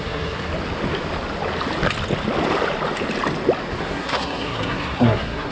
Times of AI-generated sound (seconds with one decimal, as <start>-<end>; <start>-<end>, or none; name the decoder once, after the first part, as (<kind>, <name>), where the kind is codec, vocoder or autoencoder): 0.0-0.5 (codec, SNAC); 3.8-5.5